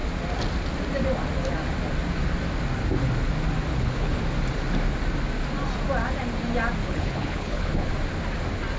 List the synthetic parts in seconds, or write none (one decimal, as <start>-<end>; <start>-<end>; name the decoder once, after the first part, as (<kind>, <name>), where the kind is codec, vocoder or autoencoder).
3.7-4.2 (codec, HILCodec); 6.8-7.9